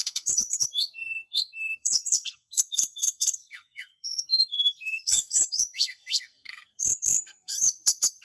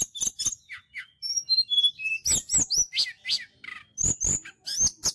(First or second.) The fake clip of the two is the first